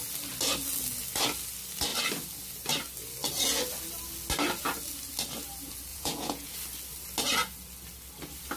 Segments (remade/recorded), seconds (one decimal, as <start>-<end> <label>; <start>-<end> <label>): 0.0-5.9 recorded; 5.9-6.5 remade; 6.5-8.6 recorded